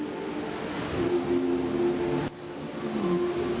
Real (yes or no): yes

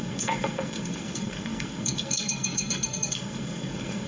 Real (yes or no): no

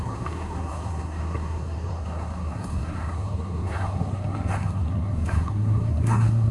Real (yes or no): no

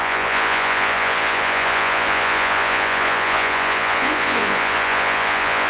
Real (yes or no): no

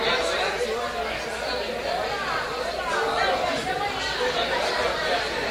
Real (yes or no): yes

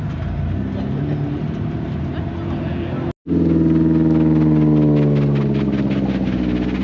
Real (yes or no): yes